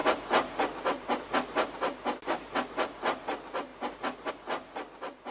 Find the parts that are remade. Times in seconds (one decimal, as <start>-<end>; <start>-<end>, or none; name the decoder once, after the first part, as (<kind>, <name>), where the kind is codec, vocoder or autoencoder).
none